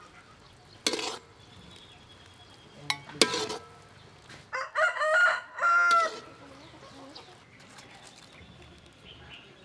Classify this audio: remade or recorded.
recorded